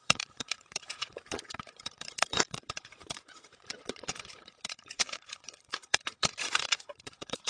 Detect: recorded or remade remade